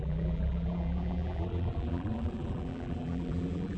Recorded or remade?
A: remade